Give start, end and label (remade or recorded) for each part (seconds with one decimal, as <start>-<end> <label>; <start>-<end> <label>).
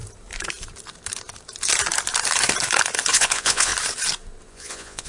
0.0-3.1 recorded; 3.1-3.7 remade; 3.7-4.5 recorded; 4.5-5.1 remade